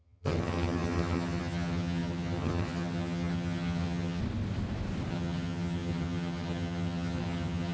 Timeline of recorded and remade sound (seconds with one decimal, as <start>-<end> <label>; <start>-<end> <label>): 0.0-4.2 remade; 4.2-5.1 recorded; 5.1-7.7 remade